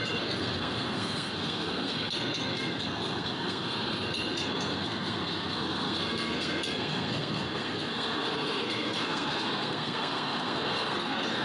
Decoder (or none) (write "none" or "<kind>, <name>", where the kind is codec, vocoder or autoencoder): codec, SNAC